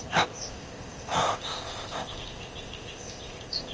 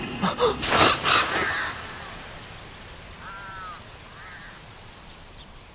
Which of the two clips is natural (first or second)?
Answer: second